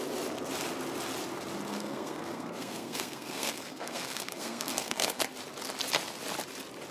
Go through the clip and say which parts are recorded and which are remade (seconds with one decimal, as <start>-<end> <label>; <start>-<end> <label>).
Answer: 0.0-1.7 recorded; 1.7-5.2 remade; 5.2-6.9 recorded